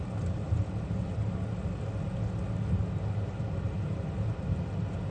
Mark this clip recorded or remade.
recorded